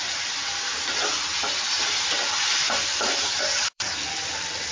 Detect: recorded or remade remade